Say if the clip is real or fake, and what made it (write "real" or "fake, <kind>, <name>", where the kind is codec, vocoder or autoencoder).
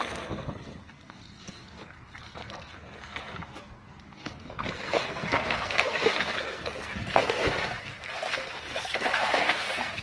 fake, codec, SNAC